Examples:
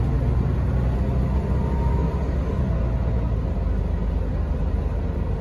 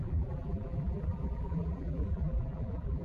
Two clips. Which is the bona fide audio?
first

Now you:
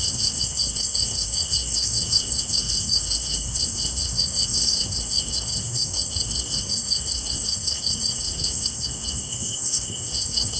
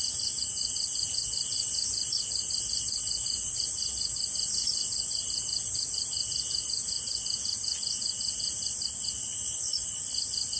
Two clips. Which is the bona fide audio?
second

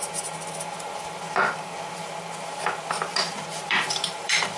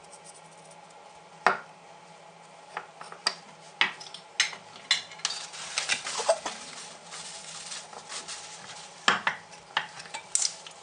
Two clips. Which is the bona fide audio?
second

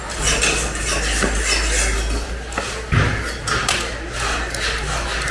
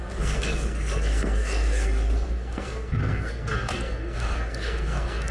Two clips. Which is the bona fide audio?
first